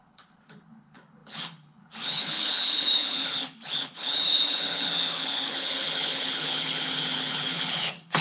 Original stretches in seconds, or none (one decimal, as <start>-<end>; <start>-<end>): none